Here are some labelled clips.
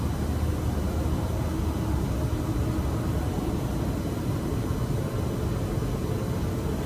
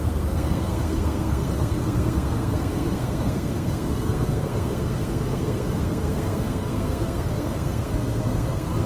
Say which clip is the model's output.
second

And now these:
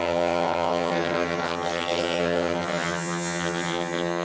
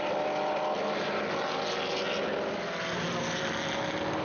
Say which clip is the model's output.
first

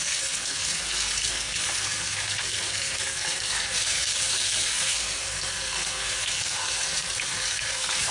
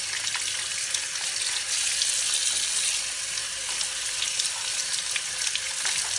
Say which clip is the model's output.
first